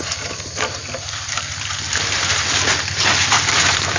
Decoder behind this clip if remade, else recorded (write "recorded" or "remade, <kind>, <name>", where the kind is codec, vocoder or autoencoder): recorded